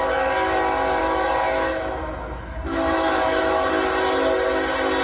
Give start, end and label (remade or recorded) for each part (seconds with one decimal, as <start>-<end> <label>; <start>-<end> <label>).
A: 0.0-1.0 recorded; 1.0-3.7 remade; 3.7-5.0 recorded